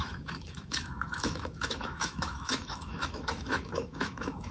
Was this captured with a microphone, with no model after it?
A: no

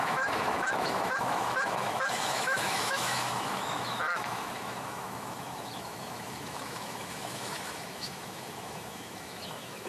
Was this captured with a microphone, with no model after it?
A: no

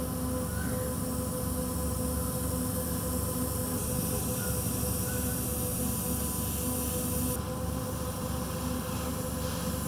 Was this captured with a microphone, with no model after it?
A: yes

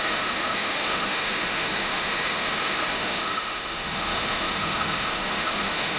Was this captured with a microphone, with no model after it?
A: no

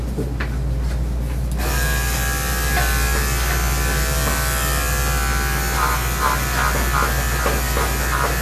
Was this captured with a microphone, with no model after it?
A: yes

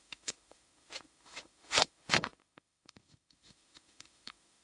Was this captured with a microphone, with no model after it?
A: no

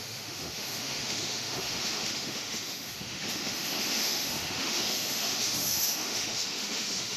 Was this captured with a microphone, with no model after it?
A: no